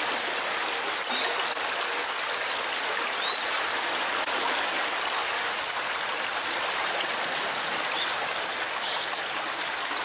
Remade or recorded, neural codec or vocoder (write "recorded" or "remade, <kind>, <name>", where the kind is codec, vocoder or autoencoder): recorded